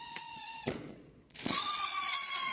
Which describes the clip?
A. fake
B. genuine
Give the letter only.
A